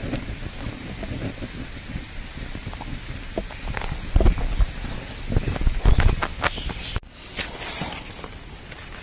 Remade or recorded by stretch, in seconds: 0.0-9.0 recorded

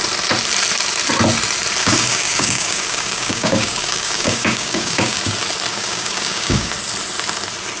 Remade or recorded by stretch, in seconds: 0.0-1.8 recorded; 1.8-5.2 remade; 5.2-5.7 recorded; 5.7-6.7 remade; 6.7-7.8 recorded

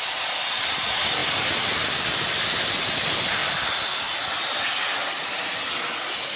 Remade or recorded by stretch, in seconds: 0.0-6.4 recorded

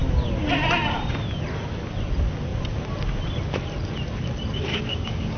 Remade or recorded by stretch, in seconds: 0.0-4.7 recorded; 4.7-5.4 remade

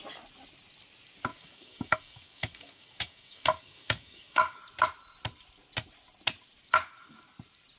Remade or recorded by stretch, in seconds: 0.0-1.3 recorded; 1.3-4.6 remade; 4.6-7.8 recorded

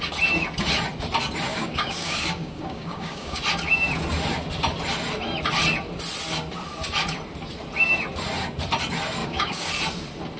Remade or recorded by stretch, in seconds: 0.0-1.5 recorded; 1.5-3.4 remade; 3.4-9.2 recorded; 9.2-9.7 remade; 9.7-10.4 recorded

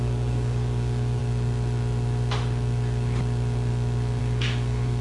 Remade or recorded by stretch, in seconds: 0.0-1.2 remade; 1.2-4.2 recorded; 4.2-5.0 remade

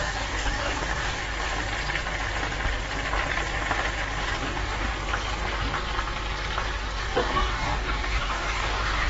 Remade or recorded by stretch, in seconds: 0.0-1.3 remade; 1.3-4.2 recorded; 4.2-4.9 remade; 4.9-7.0 recorded; 7.0-9.1 remade